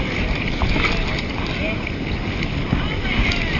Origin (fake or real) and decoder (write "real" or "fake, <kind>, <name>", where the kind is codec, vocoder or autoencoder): real